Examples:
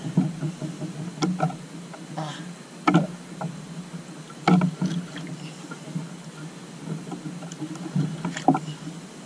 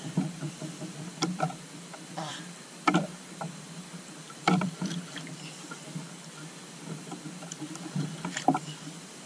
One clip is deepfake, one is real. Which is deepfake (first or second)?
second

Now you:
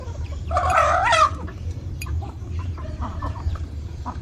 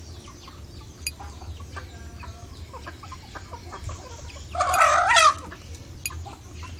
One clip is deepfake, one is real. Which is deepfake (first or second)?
first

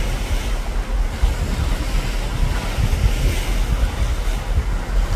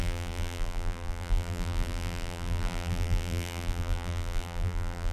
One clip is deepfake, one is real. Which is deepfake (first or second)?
second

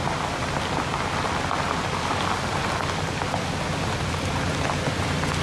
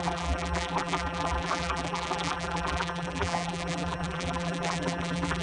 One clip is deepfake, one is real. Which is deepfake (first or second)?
second